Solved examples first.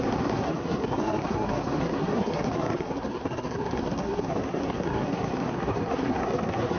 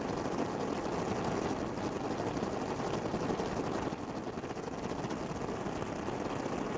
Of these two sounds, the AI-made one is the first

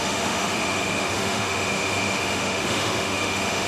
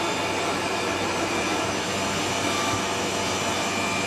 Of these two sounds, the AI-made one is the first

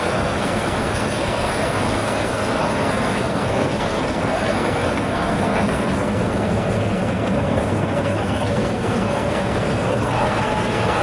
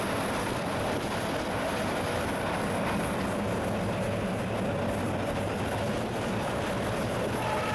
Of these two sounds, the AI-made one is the first